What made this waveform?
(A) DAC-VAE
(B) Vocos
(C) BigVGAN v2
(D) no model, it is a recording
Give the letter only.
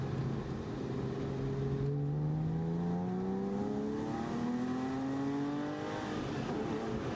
D